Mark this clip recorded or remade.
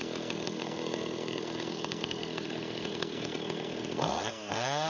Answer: remade